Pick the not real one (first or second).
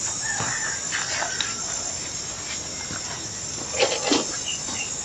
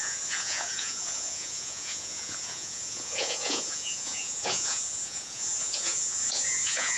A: second